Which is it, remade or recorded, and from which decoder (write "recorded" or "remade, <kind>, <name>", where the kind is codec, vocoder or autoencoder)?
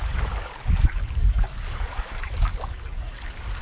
remade, codec, DAC